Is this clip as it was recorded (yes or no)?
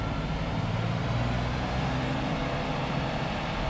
yes